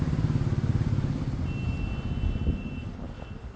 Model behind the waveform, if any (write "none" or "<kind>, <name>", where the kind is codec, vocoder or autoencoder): none